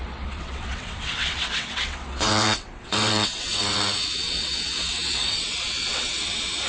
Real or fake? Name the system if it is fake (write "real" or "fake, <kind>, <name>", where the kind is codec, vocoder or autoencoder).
fake, vocoder, WaveNeXt